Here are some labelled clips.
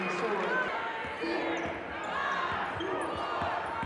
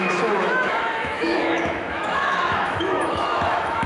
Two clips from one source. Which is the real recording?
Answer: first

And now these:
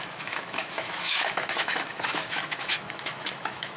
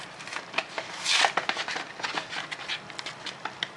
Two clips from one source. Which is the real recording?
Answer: second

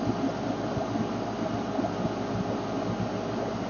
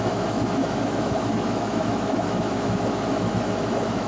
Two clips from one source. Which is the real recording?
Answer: first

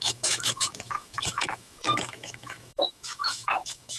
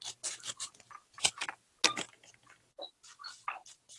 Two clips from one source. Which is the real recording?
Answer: second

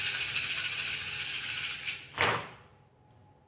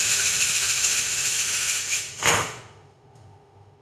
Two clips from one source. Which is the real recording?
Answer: first